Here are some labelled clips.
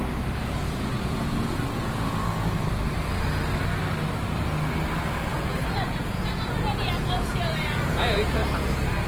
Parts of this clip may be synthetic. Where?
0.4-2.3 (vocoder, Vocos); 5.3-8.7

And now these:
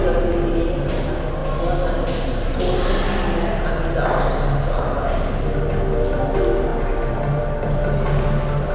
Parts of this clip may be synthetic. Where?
none

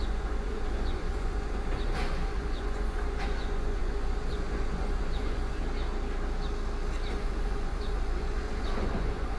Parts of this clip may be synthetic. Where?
0.0-5.6 (vocoder, Vocos); 7.1-9.4

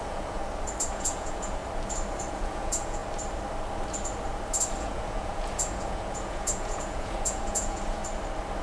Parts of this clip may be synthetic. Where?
0.0-0.4 (vocoder, Vocos); 0.9-1.6; 2.3-3.0; 4.8-8.0

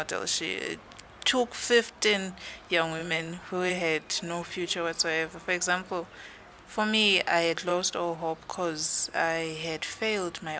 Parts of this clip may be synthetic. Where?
3.0-3.7 (vocoder, Vocos)

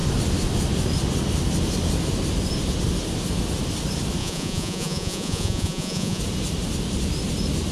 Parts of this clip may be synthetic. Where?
4.2-6.2 (vocoder, Vocos)

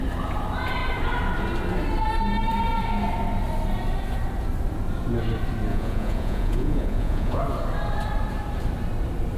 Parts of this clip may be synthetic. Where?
5.7-7.4 (vocoder, Vocos)